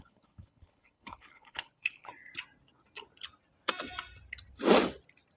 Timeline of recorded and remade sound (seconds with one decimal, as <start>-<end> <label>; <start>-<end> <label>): 0.0-2.1 remade; 2.1-5.4 recorded